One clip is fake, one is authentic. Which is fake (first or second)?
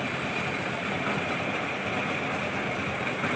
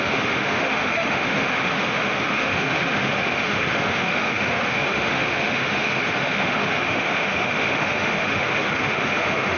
second